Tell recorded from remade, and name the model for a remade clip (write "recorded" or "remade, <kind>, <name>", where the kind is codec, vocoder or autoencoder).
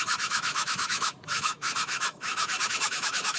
remade, autoencoder, DAC-VAE